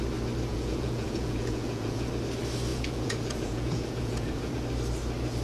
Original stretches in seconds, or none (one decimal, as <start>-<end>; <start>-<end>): 0.0-0.5; 2.1-2.7; 4.5-5.4